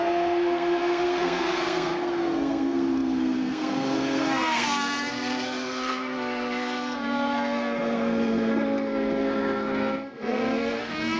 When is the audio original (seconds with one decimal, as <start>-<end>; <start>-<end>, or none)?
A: none